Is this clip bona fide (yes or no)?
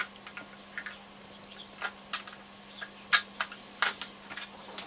yes